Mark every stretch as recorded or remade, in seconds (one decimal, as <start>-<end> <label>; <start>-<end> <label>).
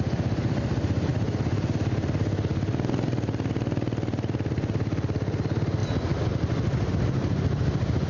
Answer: 0.0-8.1 recorded